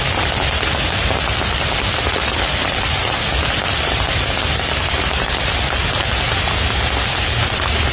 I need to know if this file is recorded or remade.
recorded